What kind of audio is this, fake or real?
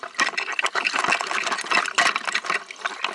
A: real